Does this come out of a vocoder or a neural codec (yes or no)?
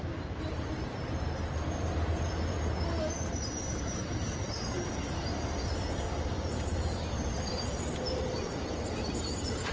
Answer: yes